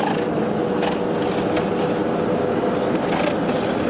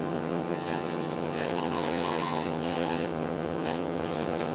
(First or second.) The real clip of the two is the first